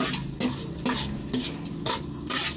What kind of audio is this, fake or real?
real